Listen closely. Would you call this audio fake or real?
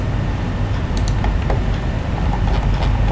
real